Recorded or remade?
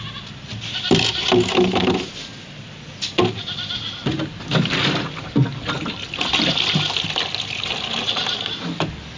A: recorded